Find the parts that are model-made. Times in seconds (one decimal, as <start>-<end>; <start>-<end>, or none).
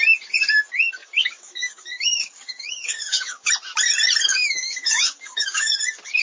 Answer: 1.0-3.5; 4.3-5.8